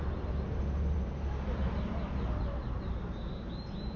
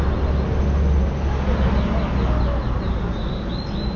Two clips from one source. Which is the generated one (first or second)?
first